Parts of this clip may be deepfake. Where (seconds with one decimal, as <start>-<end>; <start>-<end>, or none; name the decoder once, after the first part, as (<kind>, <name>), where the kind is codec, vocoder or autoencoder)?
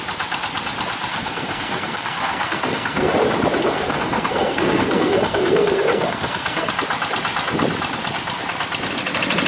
1.1-3.1 (codec, SNAC); 3.6-6.7